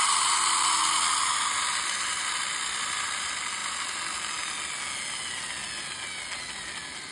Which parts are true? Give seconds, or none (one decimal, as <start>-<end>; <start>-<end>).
0.0-7.1